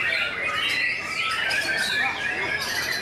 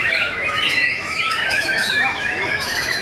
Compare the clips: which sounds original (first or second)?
first